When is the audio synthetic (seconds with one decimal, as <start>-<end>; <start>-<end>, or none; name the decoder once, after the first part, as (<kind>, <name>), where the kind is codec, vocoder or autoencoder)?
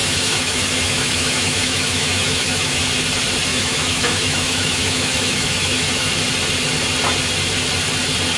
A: 0.0-2.8 (autoencoder, DAC-VAE); 3.5-6.1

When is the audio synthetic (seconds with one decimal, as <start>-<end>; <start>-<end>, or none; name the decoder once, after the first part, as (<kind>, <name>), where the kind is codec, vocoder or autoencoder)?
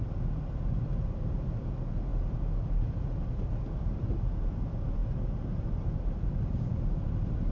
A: none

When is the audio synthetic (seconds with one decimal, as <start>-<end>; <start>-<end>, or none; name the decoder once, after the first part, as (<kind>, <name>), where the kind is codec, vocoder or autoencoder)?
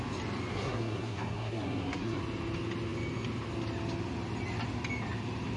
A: 0.5-2.2 (codec, SNAC)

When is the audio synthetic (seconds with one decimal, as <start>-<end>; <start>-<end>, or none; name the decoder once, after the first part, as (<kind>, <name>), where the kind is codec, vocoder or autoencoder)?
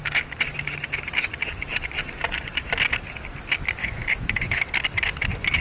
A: 3.8-4.6 (vocoder, Vocos)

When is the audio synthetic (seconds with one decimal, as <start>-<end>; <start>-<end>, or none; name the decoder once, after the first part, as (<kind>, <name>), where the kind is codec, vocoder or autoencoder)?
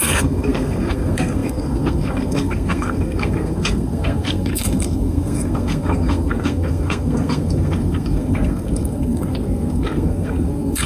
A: 0.0-10.9 (codec, SNAC)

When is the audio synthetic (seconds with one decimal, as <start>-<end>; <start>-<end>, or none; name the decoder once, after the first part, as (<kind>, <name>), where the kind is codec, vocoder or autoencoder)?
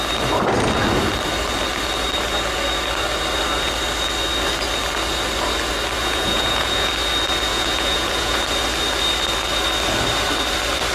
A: 6.0-6.9 (vocoder, Vocos); 7.5-8.4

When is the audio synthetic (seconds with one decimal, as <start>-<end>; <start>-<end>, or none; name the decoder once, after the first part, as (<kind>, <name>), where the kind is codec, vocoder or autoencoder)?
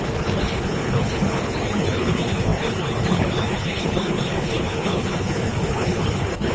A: 0.0-6.5 (codec, HILCodec)